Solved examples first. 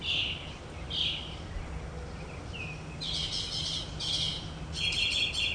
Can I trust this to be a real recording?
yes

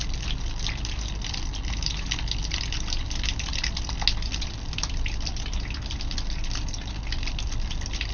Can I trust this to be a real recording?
yes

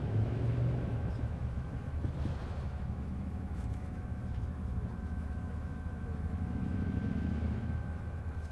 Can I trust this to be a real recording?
no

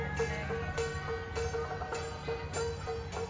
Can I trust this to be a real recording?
yes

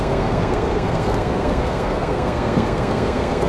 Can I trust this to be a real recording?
no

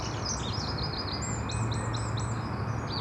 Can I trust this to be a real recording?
yes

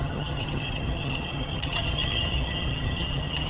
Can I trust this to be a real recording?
no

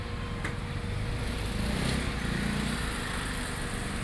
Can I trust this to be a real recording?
yes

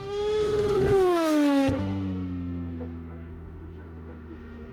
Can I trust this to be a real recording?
no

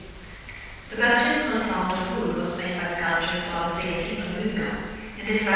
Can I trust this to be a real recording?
yes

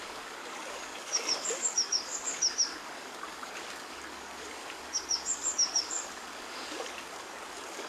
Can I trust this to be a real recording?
no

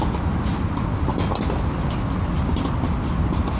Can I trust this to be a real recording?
yes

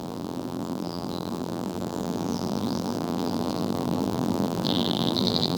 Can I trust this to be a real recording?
no